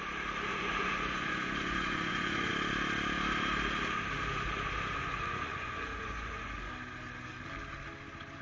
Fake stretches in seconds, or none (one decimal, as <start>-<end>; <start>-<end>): 0.5-2.5; 5.0-6.7